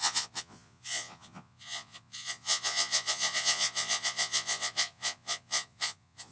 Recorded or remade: remade